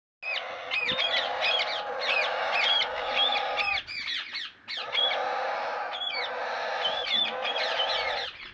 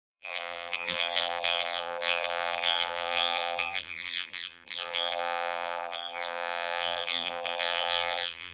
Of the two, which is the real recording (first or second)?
first